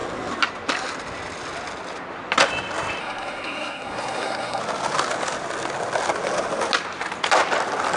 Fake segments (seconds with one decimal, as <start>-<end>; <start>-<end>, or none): 3.0-4.6